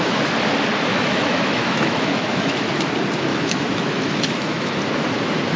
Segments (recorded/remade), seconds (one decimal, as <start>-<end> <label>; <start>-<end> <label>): 0.0-0.9 recorded; 0.9-2.7 remade; 2.7-3.3 recorded; 3.3-4.7 remade; 4.7-5.6 recorded